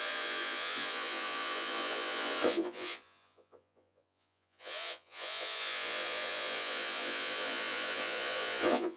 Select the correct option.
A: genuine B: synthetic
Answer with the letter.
B